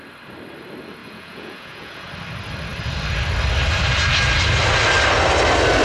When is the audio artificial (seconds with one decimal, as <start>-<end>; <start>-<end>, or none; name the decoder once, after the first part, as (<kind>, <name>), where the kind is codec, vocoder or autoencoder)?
1.0-2.1 (vocoder, Vocos)